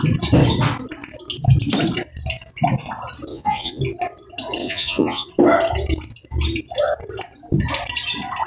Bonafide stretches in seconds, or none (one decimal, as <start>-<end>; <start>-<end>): 0.0-3.3; 3.8-4.6; 5.3-8.5